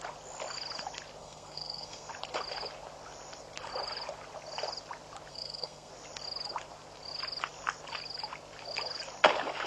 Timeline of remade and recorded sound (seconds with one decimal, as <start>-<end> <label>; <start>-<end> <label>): 0.0-1.2 recorded; 1.2-2.1 remade; 2.1-5.3 recorded; 5.3-5.9 remade; 5.9-9.7 recorded

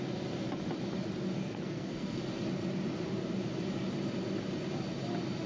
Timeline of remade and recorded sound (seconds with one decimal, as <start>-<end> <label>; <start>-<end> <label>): 0.0-1.4 recorded; 1.4-2.2 remade; 2.2-5.5 recorded